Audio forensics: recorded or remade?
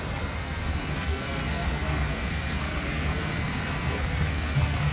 remade